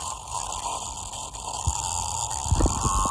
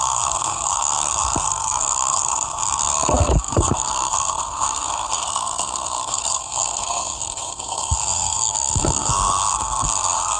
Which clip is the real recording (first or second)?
first